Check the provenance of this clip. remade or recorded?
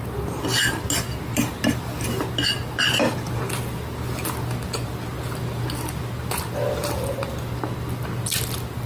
recorded